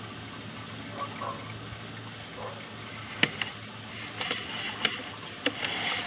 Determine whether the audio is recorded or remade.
recorded